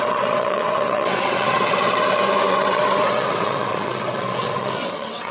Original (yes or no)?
no